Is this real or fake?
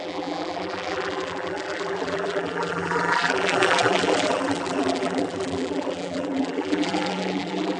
fake